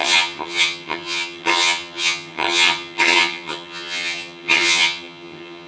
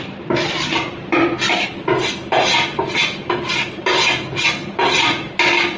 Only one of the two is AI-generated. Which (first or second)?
first